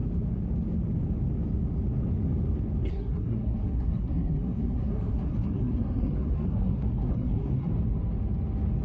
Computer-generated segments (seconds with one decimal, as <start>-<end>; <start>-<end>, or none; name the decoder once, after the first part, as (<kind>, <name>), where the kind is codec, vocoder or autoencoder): 2.9-7.7 (codec, SNAC)